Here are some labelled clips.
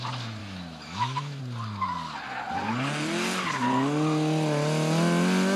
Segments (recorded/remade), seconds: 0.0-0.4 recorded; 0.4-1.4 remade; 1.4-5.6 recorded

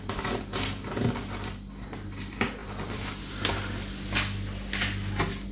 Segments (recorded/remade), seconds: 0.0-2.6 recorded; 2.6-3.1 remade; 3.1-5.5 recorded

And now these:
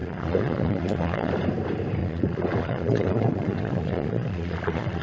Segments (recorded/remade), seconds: 0.0-1.3 remade; 1.3-2.0 recorded; 2.0-5.0 remade